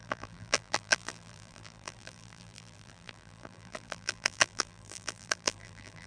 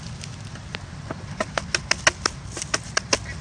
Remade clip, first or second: first